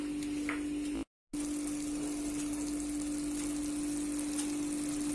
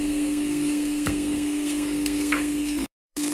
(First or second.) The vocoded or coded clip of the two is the second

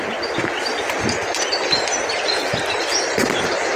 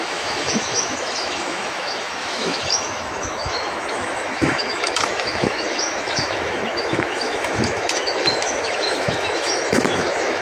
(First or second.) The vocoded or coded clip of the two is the second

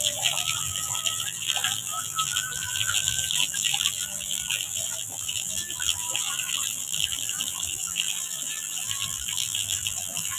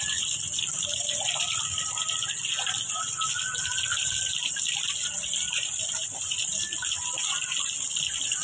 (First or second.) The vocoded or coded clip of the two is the first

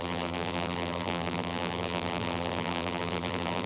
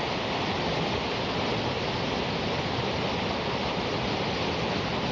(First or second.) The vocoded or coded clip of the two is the first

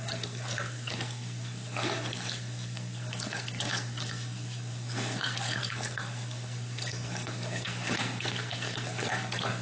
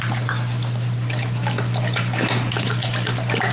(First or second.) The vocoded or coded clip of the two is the first